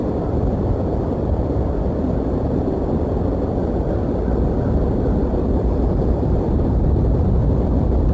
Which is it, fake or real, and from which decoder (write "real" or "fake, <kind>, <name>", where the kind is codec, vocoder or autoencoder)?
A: real